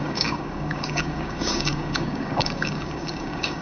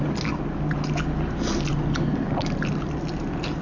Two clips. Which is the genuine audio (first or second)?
second